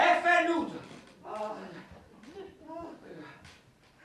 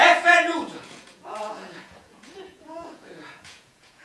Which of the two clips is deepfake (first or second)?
second